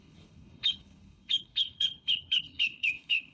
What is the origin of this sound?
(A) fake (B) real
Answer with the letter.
A